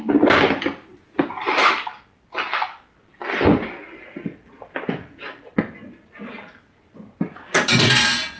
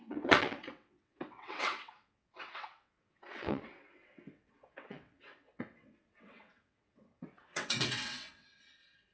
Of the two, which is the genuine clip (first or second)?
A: first